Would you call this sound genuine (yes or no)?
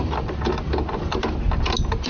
yes